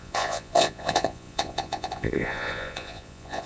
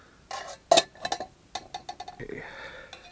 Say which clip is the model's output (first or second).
first